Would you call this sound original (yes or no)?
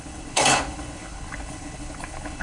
no